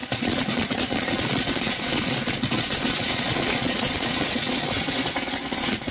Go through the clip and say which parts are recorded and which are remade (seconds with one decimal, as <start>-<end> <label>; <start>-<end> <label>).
0.0-5.9 remade